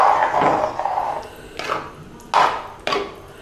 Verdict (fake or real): real